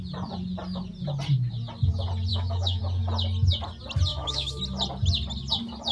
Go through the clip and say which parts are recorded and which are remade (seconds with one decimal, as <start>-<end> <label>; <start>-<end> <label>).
0.0-2.3 recorded; 2.3-2.8 remade; 2.8-4.1 recorded; 4.1-4.6 remade; 4.6-5.9 recorded